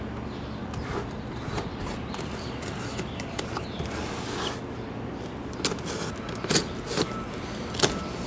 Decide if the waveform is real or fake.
real